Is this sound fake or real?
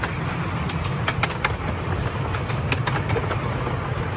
real